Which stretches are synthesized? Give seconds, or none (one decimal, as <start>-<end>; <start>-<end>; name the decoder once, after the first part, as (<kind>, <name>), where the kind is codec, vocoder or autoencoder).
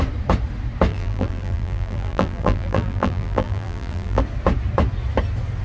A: 0.9-4.2 (vocoder, BigVGAN v2)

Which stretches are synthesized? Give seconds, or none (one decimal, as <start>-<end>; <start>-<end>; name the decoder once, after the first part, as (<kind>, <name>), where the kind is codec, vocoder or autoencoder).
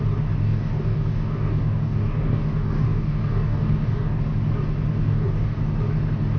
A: 0.4-4.2 (codec, DAC); 4.9-5.6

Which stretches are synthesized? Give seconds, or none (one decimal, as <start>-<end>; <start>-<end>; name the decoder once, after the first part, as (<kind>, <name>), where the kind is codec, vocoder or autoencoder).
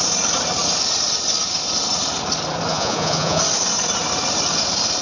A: 2.7-3.4 (vocoder, Vocos)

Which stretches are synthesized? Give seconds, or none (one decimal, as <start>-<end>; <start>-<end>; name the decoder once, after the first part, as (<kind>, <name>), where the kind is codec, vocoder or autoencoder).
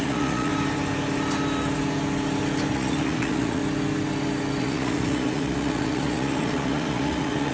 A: 0.0-0.5 (vocoder, Vocos); 2.7-3.6; 4.6-7.5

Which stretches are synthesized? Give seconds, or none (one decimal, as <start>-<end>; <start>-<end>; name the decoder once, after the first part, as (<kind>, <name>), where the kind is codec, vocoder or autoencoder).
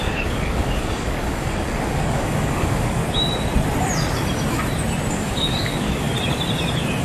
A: 0.0-3.0 (codec, DAC); 5.1-6.1